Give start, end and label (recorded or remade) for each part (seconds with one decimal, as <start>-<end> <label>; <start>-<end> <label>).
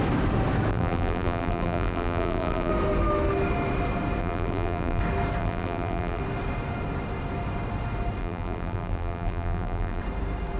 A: 0.0-0.7 recorded; 0.7-2.7 remade; 2.7-4.2 recorded; 4.2-5.0 remade; 5.0-5.4 recorded; 5.4-6.2 remade; 6.2-8.2 recorded; 8.2-10.0 remade; 10.0-10.6 recorded